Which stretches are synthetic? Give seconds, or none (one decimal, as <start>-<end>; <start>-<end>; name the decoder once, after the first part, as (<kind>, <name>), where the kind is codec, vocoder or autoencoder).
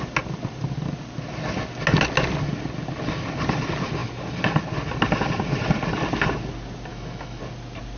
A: 6.9-7.4 (autoencoder, DAC-VAE)